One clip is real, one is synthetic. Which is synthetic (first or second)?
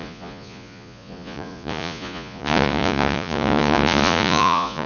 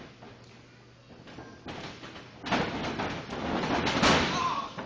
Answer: first